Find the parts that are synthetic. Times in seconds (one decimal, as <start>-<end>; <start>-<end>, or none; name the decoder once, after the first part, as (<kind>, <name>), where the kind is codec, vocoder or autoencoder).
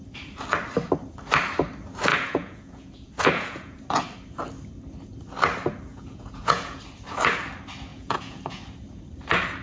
2.1-3.8 (vocoder, Vocos); 5.9-6.8; 7.9-8.6